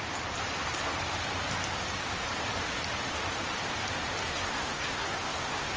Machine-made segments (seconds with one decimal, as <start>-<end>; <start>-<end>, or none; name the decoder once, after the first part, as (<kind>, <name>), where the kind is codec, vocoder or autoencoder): 4.2-5.8 (codec, SNAC)